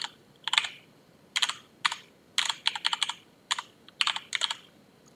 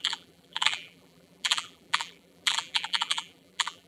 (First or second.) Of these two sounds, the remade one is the second